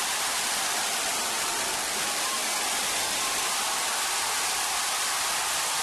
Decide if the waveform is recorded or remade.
recorded